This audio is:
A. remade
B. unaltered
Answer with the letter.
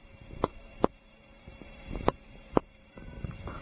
A